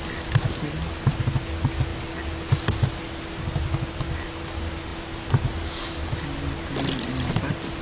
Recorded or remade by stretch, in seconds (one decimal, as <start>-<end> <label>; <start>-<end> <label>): 0.0-7.8 recorded